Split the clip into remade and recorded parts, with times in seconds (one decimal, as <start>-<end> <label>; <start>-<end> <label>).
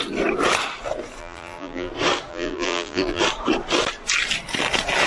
0.0-1.2 recorded; 1.2-1.9 remade; 1.9-2.3 recorded; 2.3-3.2 remade; 3.2-5.1 recorded